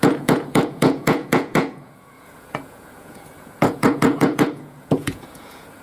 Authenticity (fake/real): fake